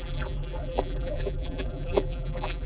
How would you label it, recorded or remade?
remade